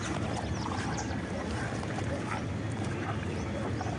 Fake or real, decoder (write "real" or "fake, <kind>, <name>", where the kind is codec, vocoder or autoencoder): real